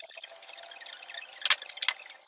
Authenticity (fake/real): real